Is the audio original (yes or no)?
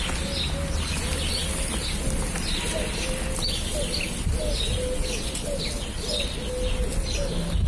yes